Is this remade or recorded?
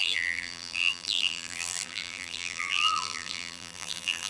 remade